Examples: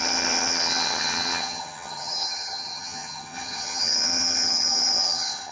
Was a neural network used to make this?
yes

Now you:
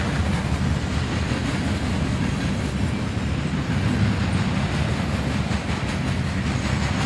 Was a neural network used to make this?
no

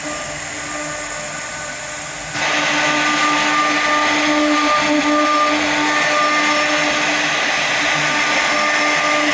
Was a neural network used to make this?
no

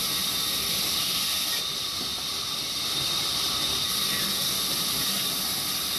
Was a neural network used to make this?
yes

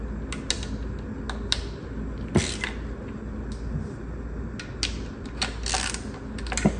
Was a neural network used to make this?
no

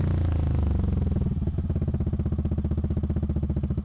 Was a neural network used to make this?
no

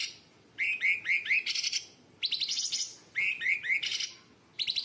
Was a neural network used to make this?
no